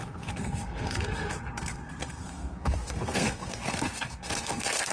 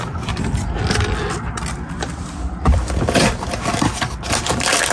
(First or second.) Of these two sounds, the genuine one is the second